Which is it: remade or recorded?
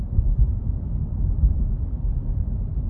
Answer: remade